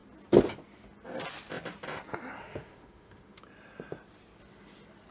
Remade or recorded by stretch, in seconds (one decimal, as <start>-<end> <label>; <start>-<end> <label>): 0.0-2.4 recorded; 2.4-3.4 remade; 3.4-5.1 recorded